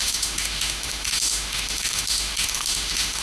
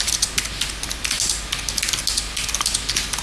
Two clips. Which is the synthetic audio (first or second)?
first